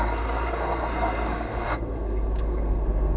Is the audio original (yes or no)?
no